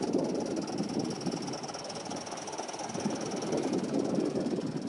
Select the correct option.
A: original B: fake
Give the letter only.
A